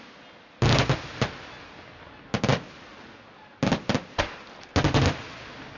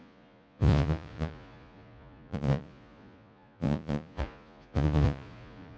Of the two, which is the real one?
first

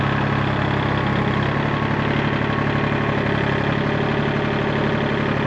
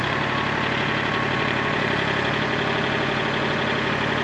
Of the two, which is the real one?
first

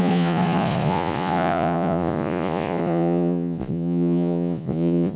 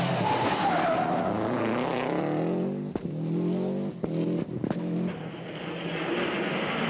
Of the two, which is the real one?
second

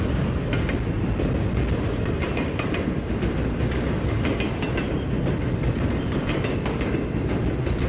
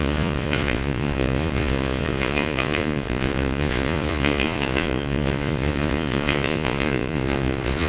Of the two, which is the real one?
first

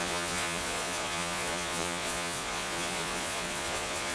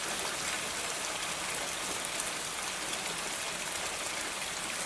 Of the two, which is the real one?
second